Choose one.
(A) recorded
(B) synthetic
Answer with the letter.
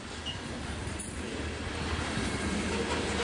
A